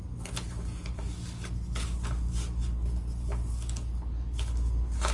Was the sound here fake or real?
real